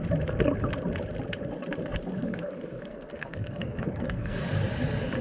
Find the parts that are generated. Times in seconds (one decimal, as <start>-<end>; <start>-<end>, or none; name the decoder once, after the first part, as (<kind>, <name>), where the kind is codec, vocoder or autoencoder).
2.2-4.4 (codec, SNAC)